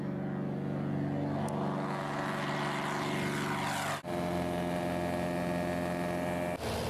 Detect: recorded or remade recorded